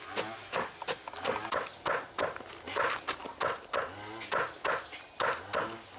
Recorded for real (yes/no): yes